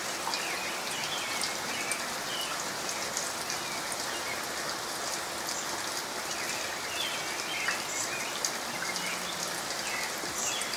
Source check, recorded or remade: recorded